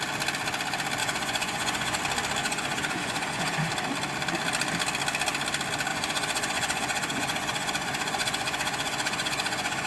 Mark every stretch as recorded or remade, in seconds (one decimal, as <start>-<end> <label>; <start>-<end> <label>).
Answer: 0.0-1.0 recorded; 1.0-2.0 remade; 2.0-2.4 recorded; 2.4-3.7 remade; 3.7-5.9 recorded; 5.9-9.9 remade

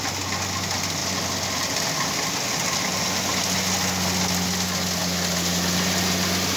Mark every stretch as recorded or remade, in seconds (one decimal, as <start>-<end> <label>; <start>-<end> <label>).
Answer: 0.0-6.6 recorded

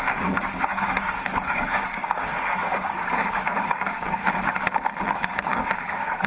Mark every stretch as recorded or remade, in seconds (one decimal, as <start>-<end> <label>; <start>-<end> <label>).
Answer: 0.0-4.2 remade; 4.2-5.1 recorded; 5.1-6.3 remade

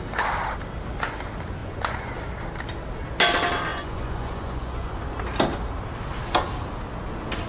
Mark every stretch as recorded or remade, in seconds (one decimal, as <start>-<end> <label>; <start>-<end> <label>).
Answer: 0.0-1.6 recorded; 1.6-2.1 remade; 2.1-3.7 recorded; 3.7-4.9 remade; 4.9-7.5 recorded

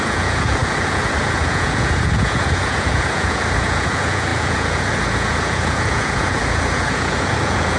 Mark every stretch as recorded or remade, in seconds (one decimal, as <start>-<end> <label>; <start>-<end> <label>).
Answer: 0.0-7.8 remade